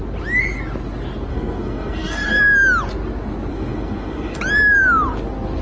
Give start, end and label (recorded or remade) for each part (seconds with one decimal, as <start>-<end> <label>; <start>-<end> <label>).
0.0-1.3 recorded; 1.3-2.4 remade; 2.4-3.5 recorded; 3.5-4.4 remade; 4.4-5.6 recorded